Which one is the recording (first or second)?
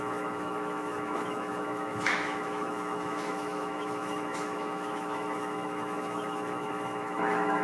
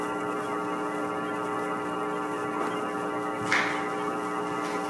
second